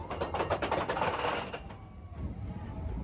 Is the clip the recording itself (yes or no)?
yes